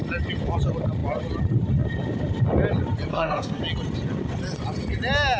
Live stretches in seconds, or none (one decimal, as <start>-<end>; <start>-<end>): 0.0-3.1; 3.6-5.4